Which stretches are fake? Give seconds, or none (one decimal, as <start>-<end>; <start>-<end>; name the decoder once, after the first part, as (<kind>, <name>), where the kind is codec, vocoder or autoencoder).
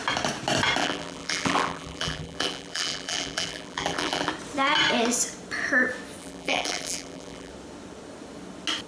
0.8-4.3 (vocoder, BigVGAN v2); 6.2-7.5